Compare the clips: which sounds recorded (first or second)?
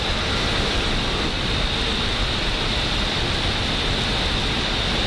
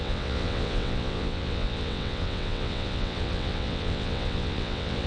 first